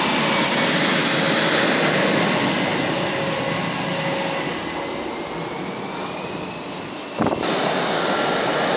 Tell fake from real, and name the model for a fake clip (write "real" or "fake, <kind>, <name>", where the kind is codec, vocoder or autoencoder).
real